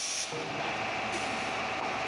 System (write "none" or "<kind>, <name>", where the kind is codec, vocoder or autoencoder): none